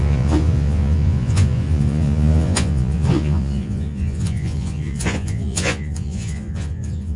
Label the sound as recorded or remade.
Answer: remade